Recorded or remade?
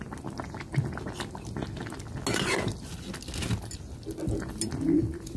recorded